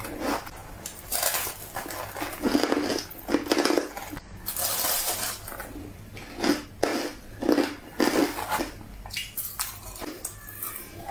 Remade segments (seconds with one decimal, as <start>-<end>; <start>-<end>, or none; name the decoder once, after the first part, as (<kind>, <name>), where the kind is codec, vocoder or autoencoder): none